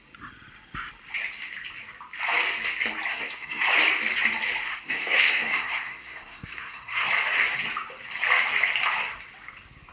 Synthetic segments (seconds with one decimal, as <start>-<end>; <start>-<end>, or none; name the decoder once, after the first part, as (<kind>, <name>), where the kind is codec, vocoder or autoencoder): 3.1-3.7 (codec, SNAC); 4.7-7.1